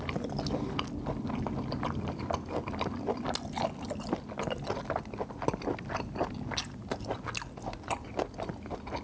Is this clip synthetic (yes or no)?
no